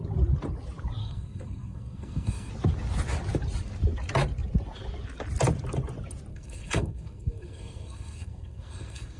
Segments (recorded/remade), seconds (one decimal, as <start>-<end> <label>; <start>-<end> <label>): 0.0-1.0 recorded; 1.0-2.5 remade; 2.5-6.3 recorded; 6.3-9.2 remade

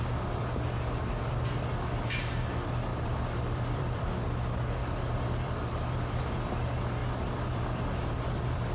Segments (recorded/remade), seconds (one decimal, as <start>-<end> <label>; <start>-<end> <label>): 0.0-2.9 recorded; 2.9-4.1 remade; 4.1-4.8 recorded; 4.8-6.2 remade; 6.2-7.0 recorded; 7.0-8.7 remade

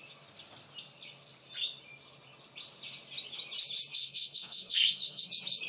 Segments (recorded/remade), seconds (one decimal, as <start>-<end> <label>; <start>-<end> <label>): 0.0-3.9 recorded; 3.9-5.3 remade; 5.3-5.7 recorded

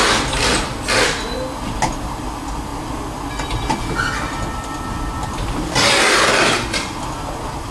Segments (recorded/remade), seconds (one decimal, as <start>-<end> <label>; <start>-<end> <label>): 0.0-7.7 recorded

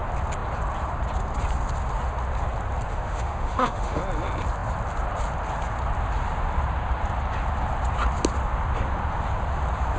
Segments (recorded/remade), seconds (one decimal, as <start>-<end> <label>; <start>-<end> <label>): 0.0-2.9 recorded; 2.9-4.0 remade; 4.0-10.0 recorded